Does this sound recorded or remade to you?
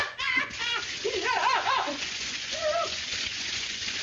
remade